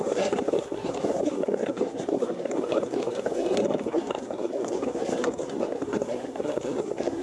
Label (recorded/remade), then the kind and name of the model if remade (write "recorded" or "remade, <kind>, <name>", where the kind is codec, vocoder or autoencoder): remade, codec, SNAC